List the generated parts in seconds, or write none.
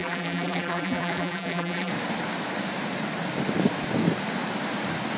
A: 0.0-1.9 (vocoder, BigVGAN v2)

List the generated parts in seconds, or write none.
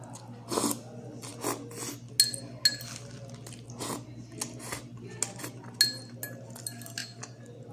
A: none